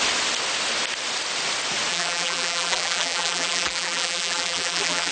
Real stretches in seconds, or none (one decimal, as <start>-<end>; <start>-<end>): 0.0-1.9